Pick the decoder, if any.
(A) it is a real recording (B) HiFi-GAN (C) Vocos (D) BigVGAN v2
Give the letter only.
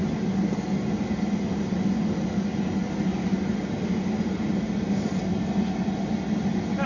A